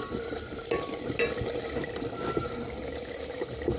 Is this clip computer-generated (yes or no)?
no